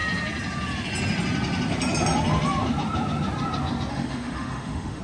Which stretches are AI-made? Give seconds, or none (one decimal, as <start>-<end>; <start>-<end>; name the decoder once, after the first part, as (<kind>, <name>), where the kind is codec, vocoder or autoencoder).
3.9-5.0 (autoencoder, DAC-VAE)